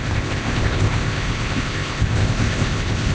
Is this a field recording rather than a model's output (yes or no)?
no